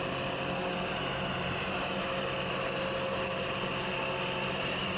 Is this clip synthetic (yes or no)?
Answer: no